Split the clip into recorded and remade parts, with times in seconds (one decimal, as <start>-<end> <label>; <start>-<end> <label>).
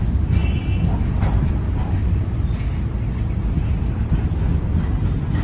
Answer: 0.0-5.4 recorded